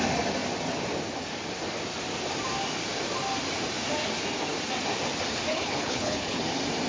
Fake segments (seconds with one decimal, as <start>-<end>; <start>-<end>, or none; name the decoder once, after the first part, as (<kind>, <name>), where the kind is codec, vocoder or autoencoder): 5.5-6.4 (codec, HILCodec)